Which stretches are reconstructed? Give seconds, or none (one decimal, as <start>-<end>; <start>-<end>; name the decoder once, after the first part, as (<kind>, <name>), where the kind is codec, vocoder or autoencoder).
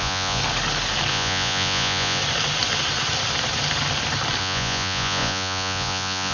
0.0-0.4 (vocoder, Vocos); 1.1-2.2; 4.4-6.3